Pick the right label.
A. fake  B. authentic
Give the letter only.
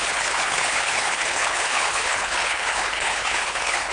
A